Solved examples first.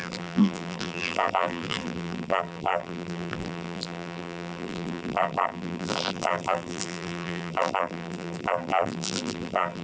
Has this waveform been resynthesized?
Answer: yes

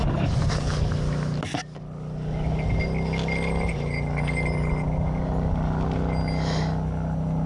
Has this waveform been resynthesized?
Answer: no